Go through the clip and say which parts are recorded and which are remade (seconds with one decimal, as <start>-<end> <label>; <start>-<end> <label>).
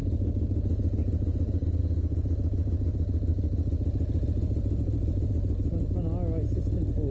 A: 0.0-7.1 recorded